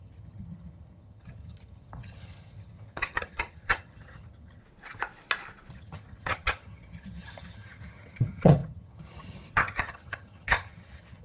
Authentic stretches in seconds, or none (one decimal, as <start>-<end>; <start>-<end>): 4.6-5.7